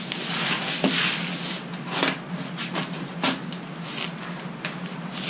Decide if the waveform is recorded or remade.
recorded